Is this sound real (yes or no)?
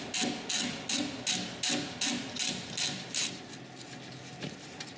yes